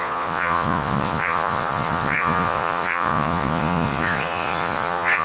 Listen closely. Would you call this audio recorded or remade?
remade